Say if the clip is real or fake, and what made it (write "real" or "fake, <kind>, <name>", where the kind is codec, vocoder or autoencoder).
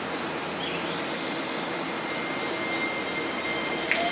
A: real